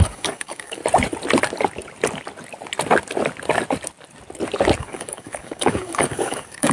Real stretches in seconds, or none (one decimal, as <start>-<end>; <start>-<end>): 0.8-4.8